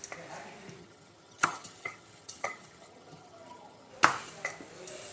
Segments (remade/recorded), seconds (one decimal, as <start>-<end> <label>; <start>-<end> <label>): 0.0-0.8 recorded; 0.8-3.9 remade; 3.9-5.1 recorded